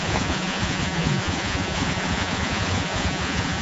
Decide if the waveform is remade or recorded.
remade